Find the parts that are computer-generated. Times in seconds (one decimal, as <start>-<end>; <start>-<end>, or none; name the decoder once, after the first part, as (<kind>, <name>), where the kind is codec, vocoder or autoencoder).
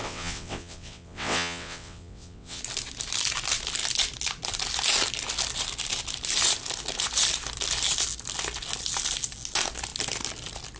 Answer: 0.0-2.6 (vocoder, WaveNeXt)